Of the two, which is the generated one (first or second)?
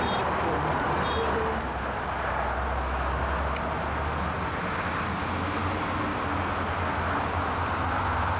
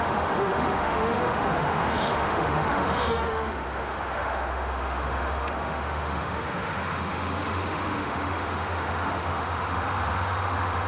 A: second